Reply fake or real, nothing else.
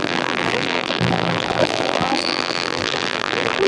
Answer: fake